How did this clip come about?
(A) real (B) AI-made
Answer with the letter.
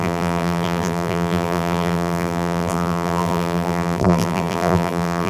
B